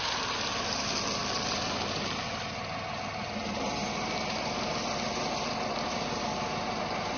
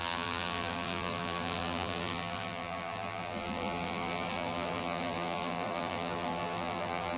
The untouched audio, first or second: first